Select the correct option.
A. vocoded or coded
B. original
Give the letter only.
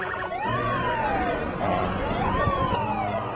A